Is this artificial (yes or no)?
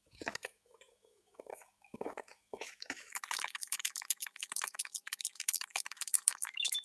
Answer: yes